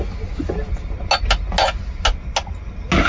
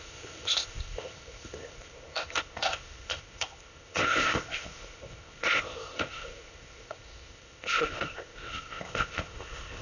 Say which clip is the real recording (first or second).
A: first